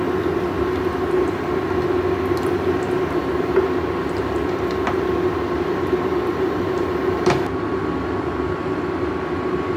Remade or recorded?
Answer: recorded